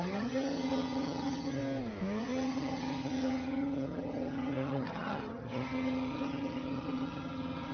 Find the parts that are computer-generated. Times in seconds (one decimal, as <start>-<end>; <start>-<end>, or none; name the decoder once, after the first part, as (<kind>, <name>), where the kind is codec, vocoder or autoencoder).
0.0-1.6 (vocoder, HiFi-GAN); 2.2-7.7